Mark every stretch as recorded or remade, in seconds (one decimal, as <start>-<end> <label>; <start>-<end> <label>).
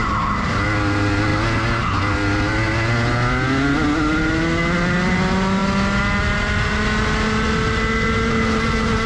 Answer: 0.0-9.1 recorded